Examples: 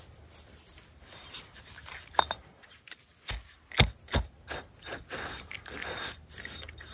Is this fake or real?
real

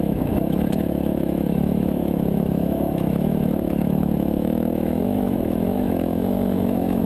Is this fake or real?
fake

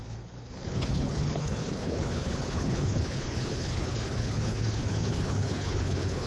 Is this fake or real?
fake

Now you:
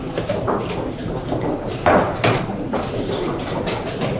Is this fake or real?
real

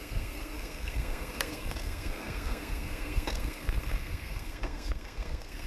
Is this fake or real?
fake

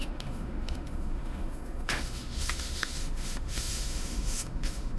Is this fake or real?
fake